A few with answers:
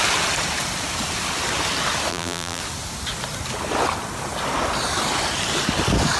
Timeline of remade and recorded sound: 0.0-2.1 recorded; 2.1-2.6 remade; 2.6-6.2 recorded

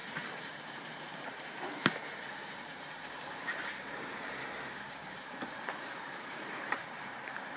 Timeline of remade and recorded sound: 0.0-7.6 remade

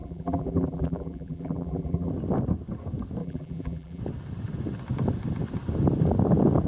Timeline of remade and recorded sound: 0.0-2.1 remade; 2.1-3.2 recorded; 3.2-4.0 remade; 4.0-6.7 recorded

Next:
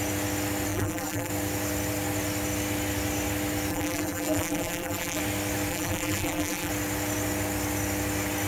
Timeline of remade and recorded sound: 0.0-0.7 recorded; 0.7-1.3 remade; 1.3-3.7 recorded; 3.7-5.2 remade; 5.2-5.7 recorded; 5.7-6.7 remade; 6.7-8.5 recorded